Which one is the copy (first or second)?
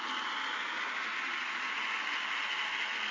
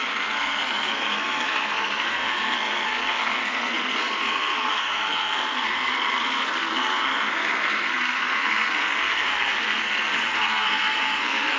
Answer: second